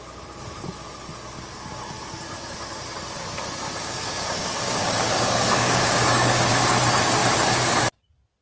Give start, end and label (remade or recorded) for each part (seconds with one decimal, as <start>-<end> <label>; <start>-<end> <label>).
0.0-3.8 recorded; 3.8-6.5 remade; 6.5-8.4 recorded